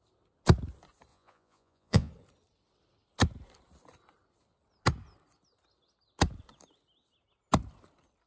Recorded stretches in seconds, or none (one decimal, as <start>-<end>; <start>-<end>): 0.0-1.1; 2.1-8.3